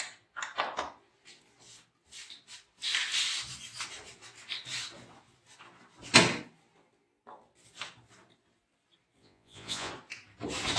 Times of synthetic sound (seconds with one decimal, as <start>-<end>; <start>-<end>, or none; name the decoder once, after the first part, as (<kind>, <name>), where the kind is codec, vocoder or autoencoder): 9.2-9.9 (vocoder, Vocos)